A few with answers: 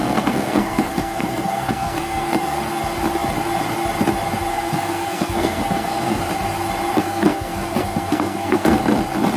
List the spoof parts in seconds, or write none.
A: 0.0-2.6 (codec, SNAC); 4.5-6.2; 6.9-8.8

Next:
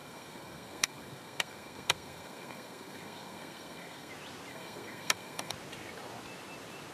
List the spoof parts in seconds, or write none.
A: 0.0-4.1 (codec, SNAC); 4.5-5.5

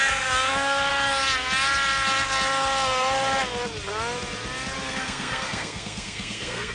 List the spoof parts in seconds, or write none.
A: 0.0-0.9 (codec, SNAC); 4.9-6.7

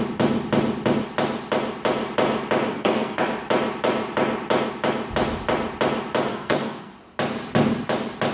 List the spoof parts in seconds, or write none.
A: 2.7-3.2 (codec, SNAC); 6.3-6.9

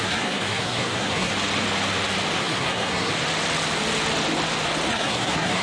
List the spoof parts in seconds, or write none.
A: 0.0-1.3 (codec, SNAC); 2.4-3.1; 4.9-5.6

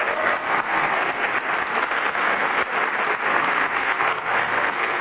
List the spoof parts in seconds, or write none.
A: 0.0-1.3 (codec, SNAC); 1.8-2.6; 3.2-5.0

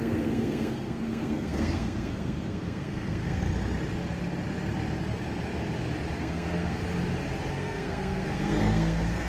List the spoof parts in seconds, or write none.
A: 0.0-3.4 (codec, SNAC); 6.2-6.8; 7.5-9.3